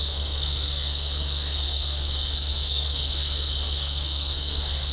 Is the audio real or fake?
fake